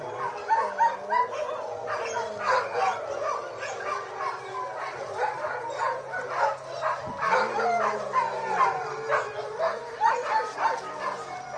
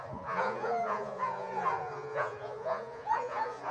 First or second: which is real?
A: first